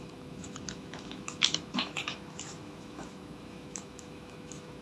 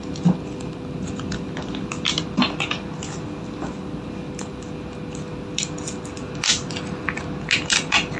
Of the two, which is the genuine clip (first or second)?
second